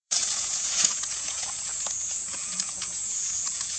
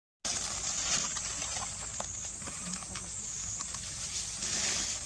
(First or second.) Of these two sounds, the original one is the second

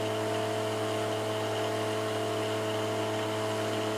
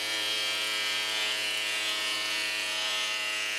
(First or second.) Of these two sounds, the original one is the first